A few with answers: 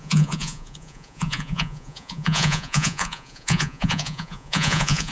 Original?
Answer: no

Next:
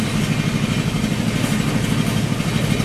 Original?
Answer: yes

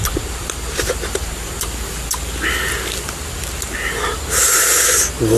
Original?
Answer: yes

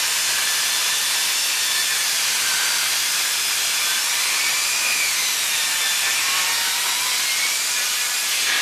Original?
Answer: no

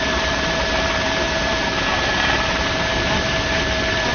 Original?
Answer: no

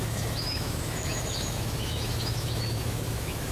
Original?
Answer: no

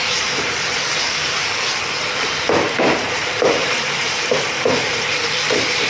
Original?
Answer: no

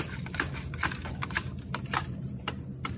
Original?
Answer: yes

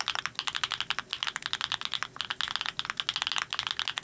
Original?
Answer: yes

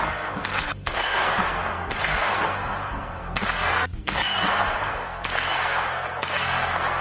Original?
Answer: no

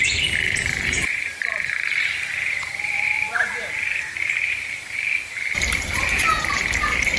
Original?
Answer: no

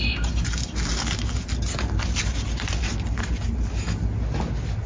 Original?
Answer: yes